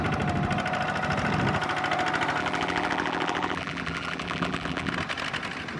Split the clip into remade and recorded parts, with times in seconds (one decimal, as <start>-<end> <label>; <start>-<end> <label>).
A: 0.0-2.4 recorded; 2.4-4.9 remade; 4.9-5.8 recorded